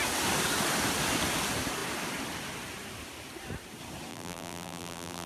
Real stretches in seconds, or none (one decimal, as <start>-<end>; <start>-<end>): 0.0-4.1